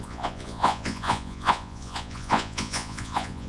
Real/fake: fake